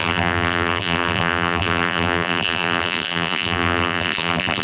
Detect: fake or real fake